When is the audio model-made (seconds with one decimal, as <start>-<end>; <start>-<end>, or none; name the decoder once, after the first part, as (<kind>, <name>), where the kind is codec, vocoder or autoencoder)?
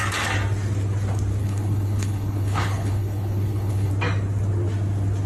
1.4-3.9 (codec, HILCodec)